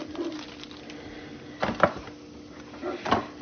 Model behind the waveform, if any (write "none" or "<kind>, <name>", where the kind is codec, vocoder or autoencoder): none